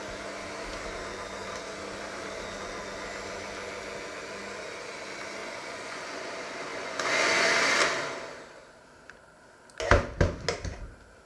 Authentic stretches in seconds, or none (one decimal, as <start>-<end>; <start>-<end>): 0.0-5.4; 6.3-6.7; 7.5-11.3